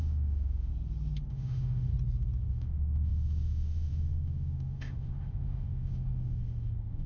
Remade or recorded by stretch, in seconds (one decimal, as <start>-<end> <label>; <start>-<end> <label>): 0.0-0.7 remade; 0.7-1.3 recorded; 1.3-1.9 remade; 1.9-2.5 recorded; 2.5-7.1 remade